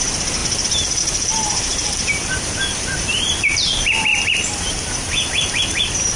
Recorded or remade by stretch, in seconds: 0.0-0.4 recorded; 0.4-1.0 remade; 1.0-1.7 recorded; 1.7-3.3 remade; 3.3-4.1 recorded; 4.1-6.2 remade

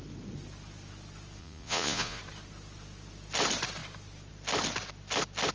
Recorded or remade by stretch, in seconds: 0.0-1.4 recorded; 1.4-2.2 remade; 2.2-5.5 recorded